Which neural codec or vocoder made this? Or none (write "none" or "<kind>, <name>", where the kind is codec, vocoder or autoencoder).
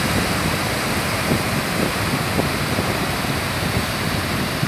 none